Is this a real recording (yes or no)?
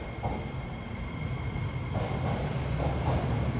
yes